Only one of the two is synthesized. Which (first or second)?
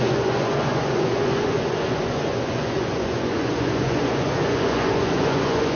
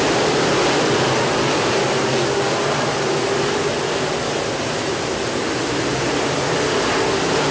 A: first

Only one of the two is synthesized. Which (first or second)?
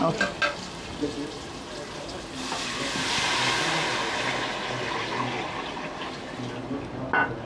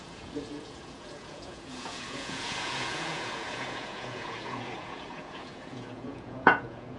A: second